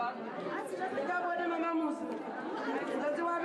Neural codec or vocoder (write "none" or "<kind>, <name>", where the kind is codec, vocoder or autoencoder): none